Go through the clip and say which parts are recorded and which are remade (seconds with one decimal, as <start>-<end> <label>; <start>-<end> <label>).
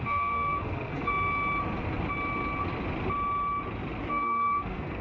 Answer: 0.0-1.1 remade; 1.1-4.1 recorded; 4.1-5.0 remade